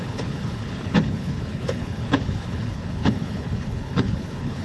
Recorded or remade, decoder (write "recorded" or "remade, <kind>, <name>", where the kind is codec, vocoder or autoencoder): remade, codec, HILCodec